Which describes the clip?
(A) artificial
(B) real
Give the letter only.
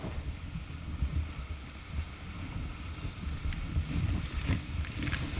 B